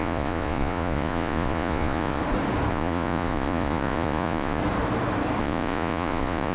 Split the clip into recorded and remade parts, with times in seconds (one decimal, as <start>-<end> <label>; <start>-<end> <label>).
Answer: 0.0-2.2 remade; 2.2-2.7 recorded; 2.7-4.6 remade; 4.6-5.4 recorded; 5.4-6.5 remade